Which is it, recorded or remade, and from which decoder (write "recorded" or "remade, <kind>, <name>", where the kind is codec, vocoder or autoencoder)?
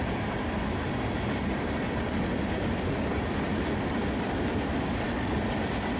remade, vocoder, BigVGAN v2